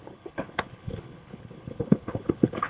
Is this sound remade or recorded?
remade